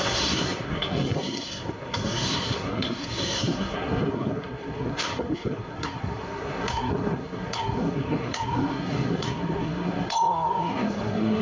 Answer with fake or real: fake